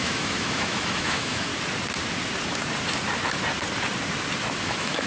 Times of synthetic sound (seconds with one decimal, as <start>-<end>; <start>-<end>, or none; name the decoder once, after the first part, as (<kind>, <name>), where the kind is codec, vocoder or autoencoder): 0.0-1.5 (autoencoder, DAC-VAE); 4.6-5.1